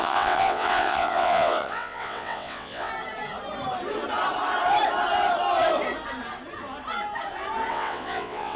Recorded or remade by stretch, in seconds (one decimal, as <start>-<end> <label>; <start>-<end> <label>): 0.0-2.9 remade; 2.9-7.7 recorded; 7.7-8.6 remade

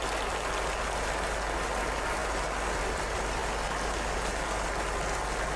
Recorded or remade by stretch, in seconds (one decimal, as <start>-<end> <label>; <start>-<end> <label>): 0.0-5.6 recorded

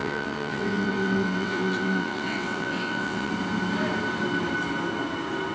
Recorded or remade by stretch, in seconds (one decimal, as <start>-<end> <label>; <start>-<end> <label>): 0.0-3.3 remade; 3.3-5.5 recorded

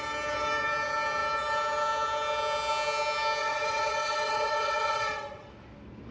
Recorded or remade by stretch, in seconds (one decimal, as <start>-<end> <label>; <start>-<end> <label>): 0.0-3.4 recorded; 3.4-5.5 remade; 5.5-6.1 recorded

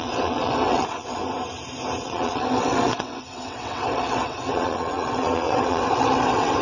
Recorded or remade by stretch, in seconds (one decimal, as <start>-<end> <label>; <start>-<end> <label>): 0.0-1.2 remade; 1.2-2.0 recorded; 2.0-6.6 remade